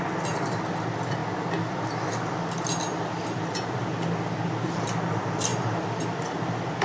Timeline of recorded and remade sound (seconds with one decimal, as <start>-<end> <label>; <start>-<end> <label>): 0.0-6.8 recorded